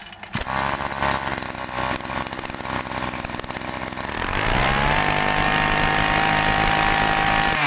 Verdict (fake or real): real